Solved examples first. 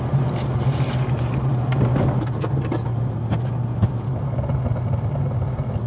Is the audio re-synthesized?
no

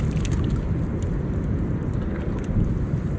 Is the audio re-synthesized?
no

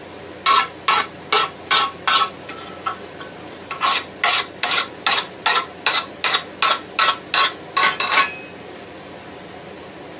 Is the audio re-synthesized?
no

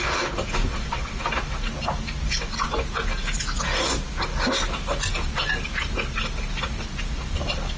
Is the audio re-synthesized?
no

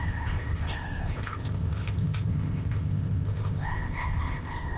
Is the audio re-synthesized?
yes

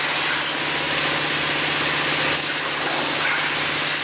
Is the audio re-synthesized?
no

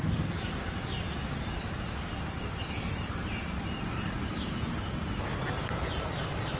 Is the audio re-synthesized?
no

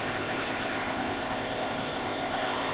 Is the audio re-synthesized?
yes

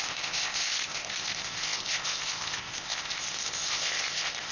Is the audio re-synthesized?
yes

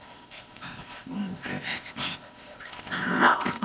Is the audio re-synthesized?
yes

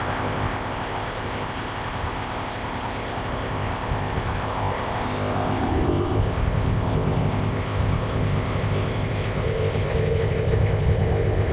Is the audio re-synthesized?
yes